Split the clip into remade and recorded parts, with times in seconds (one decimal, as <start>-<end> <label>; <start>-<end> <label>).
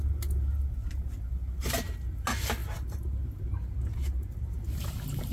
0.0-5.3 recorded